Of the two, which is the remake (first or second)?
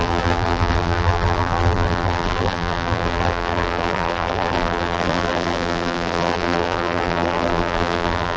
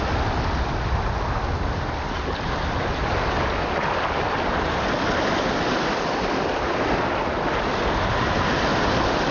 first